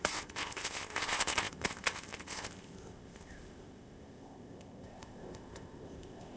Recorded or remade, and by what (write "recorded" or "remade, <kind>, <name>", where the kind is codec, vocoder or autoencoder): remade, codec, ZipCodec